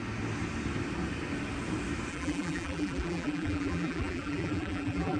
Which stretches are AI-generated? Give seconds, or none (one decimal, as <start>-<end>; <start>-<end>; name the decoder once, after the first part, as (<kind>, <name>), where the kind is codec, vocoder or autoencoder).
2.1-5.2 (vocoder, BigVGAN v2)